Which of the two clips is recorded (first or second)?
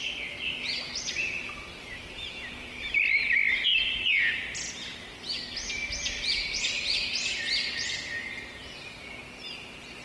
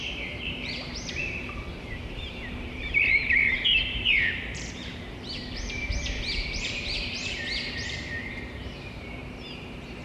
first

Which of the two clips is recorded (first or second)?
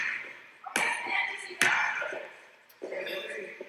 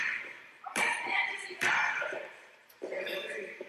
first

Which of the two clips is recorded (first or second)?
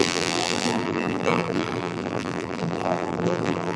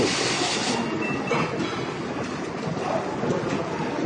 second